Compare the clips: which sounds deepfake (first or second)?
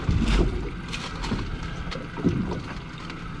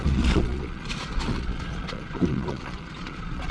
second